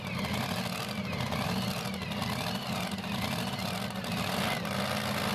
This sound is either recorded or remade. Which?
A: recorded